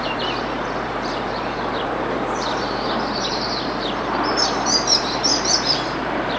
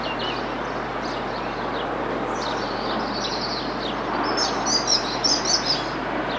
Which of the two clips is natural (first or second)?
second